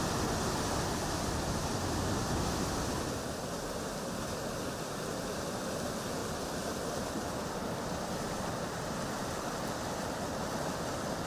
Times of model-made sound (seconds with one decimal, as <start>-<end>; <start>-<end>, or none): none